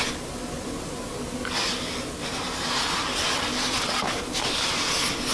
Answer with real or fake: real